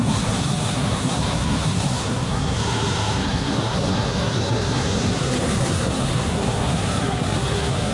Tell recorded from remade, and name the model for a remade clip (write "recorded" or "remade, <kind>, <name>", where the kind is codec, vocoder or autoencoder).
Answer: remade, codec, SNAC